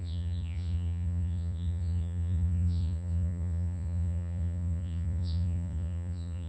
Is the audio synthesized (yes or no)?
yes